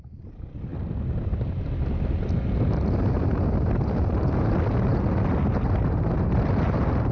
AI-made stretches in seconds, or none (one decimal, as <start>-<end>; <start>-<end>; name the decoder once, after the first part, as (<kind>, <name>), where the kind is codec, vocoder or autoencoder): none